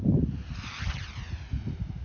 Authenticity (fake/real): fake